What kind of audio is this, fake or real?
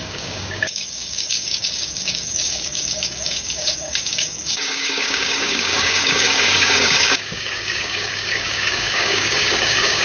fake